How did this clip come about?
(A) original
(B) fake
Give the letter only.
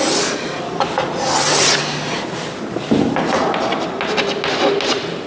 A